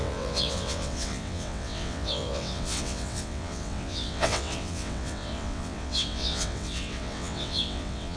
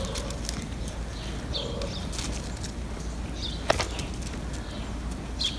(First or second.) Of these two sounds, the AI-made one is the first